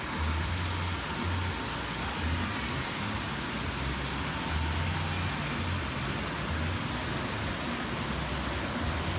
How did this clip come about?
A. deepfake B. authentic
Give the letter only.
B